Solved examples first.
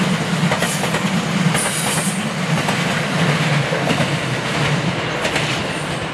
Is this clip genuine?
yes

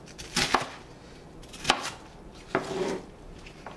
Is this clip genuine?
yes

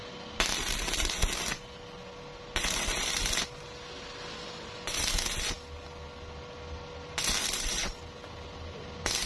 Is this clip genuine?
yes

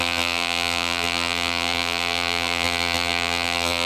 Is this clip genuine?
no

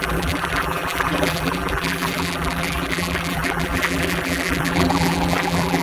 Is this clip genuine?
no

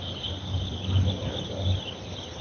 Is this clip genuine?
yes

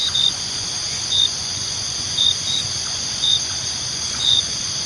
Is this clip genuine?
no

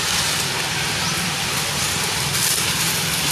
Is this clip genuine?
yes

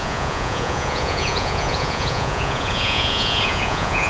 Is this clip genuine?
no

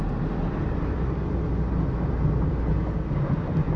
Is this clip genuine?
yes